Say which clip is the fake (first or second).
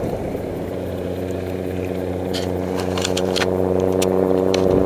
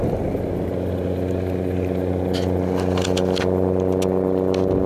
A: first